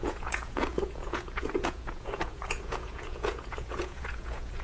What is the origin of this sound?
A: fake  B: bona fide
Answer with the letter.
A